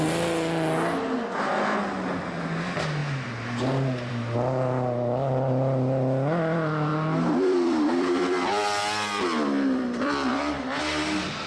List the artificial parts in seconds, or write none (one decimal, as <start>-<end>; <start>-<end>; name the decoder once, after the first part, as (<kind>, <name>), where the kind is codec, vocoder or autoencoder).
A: 6.9-10.8 (vocoder, BigVGAN v2)